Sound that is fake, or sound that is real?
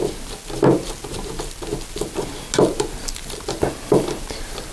real